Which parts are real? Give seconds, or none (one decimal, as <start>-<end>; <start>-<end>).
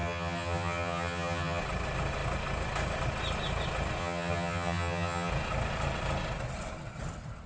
1.6-4.0; 5.3-7.5